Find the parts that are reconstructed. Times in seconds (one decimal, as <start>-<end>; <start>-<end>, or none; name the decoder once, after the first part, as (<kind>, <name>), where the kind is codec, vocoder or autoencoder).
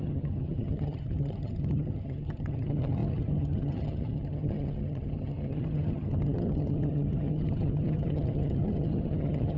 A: 0.0-9.6 (vocoder, HiFi-GAN)